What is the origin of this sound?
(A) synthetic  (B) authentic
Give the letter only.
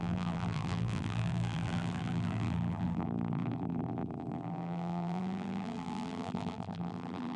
A